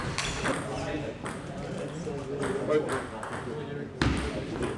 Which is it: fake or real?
real